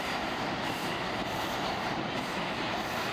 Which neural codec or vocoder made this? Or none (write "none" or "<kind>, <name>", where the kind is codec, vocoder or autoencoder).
vocoder, BigVGAN v2